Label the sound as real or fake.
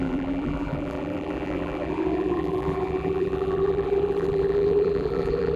fake